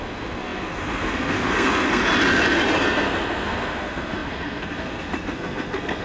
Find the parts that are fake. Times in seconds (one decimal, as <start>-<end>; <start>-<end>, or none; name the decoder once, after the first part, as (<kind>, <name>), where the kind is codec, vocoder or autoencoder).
0.0-2.0 (codec, SNAC); 2.8-6.0